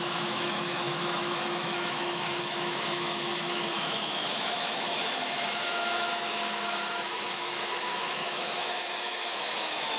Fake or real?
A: fake